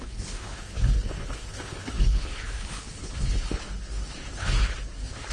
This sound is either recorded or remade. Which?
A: remade